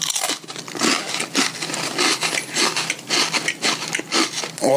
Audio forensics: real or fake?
real